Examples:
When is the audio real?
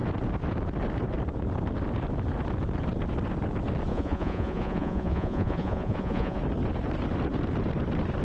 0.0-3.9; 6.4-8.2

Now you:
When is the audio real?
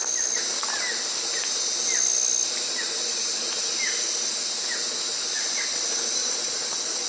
0.0-6.2